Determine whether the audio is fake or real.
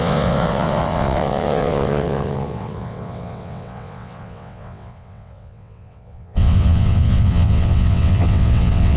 fake